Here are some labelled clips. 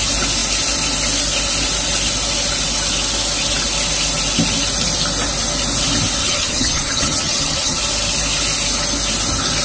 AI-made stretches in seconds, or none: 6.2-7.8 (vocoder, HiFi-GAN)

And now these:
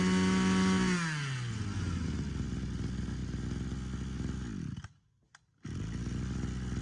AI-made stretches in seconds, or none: none